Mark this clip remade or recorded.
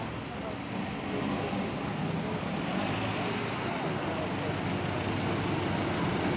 recorded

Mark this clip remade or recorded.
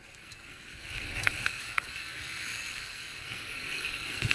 remade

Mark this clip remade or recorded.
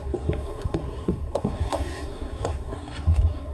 remade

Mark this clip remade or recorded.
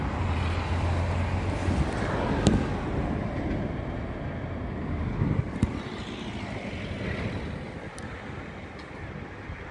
recorded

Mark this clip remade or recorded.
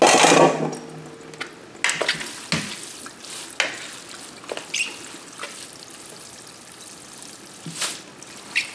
recorded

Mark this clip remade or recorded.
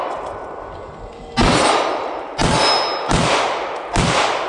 recorded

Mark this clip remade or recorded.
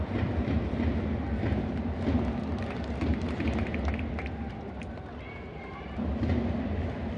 recorded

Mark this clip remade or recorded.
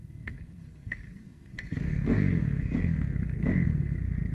remade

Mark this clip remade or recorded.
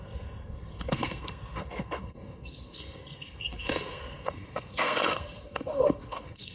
remade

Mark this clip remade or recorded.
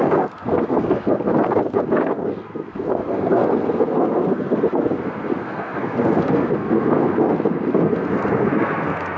remade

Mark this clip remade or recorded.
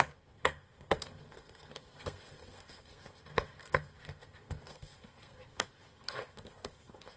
remade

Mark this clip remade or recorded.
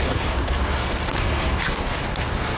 remade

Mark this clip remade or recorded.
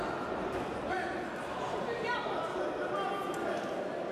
recorded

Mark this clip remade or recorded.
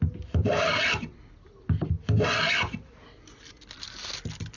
recorded